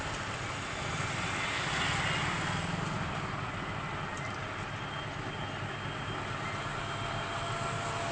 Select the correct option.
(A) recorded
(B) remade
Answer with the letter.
A